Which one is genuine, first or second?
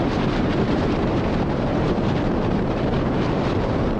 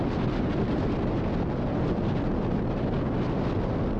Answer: second